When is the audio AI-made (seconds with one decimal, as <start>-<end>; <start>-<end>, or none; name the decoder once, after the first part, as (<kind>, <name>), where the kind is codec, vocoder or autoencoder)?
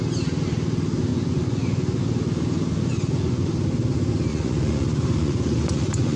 1.1-2.0 (vocoder, Vocos); 2.9-3.5; 4.3-6.2